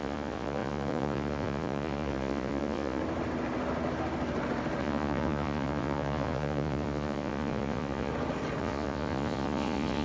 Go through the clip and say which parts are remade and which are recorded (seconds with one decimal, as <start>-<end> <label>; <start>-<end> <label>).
0.0-3.0 remade; 3.0-4.8 recorded; 4.8-8.1 remade; 8.1-8.6 recorded; 8.6-10.0 remade